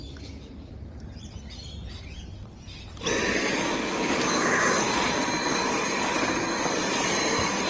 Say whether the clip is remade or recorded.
remade